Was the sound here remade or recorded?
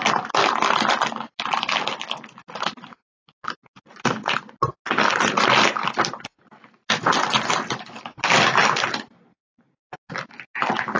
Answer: recorded